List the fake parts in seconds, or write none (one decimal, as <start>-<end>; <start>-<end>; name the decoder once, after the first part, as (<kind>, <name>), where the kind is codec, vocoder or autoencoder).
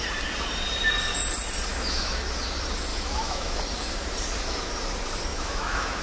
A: 1.7-2.2 (autoencoder, DAC-VAE); 2.9-3.6; 5.3-6.0